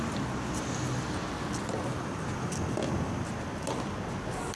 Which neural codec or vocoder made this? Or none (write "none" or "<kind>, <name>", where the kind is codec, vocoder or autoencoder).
none